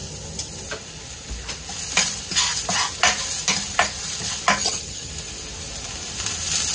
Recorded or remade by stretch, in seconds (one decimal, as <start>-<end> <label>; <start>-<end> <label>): 0.0-4.6 recorded; 4.6-5.1 remade; 5.1-6.7 recorded